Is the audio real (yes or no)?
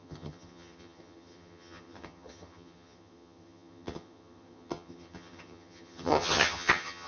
no